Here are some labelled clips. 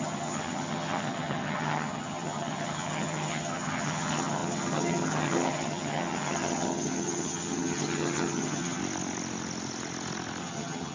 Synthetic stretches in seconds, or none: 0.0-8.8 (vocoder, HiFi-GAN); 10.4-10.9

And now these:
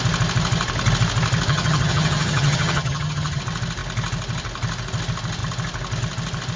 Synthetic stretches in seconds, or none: 1.5-3.4 (vocoder, HiFi-GAN)

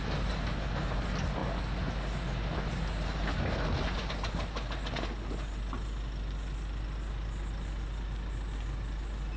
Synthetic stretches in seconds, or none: none